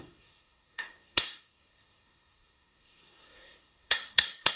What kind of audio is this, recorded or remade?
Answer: remade